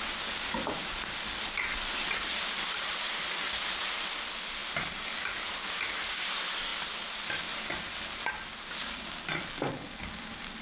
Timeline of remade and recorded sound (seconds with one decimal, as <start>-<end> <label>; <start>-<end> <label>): 0.0-10.6 recorded